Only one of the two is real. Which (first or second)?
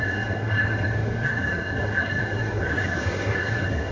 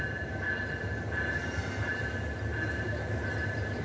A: second